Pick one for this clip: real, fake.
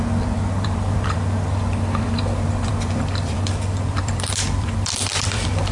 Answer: fake